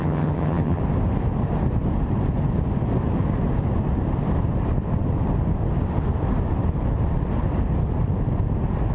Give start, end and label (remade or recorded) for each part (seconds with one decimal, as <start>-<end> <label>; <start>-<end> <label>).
0.0-0.8 remade; 0.8-8.9 recorded